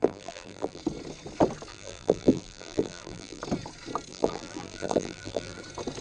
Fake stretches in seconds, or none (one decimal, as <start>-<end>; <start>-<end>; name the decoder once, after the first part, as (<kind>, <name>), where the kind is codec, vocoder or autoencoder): 0.0-0.8 (vocoder, BigVGAN v2); 1.7-3.4; 4.1-5.6